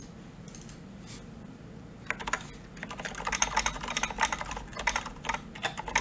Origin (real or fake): real